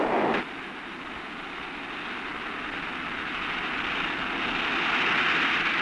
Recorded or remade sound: recorded